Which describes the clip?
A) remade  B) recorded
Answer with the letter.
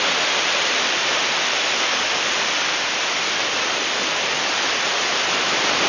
A